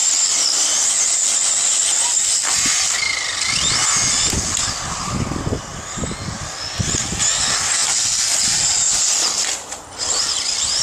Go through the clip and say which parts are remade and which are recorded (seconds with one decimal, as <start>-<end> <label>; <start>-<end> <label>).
0.0-10.8 recorded